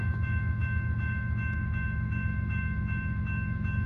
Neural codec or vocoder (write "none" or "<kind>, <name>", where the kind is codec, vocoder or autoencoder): autoencoder, DAC-VAE